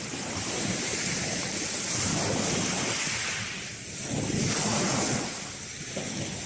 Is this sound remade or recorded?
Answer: recorded